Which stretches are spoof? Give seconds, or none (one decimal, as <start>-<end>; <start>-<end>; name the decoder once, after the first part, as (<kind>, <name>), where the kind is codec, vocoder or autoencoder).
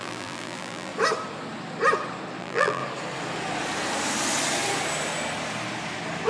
0.0-0.9 (vocoder, BigVGAN v2); 2.4-2.8